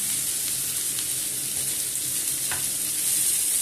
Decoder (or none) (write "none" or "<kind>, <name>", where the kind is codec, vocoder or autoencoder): none